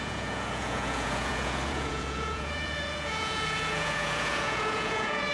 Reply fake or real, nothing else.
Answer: fake